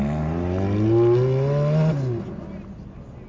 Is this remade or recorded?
recorded